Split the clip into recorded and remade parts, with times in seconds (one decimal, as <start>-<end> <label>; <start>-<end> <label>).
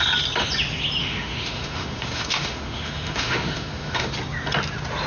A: 0.0-1.0 recorded; 1.0-4.1 remade; 4.1-5.1 recorded